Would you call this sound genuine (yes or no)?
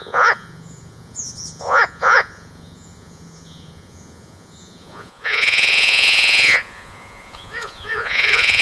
no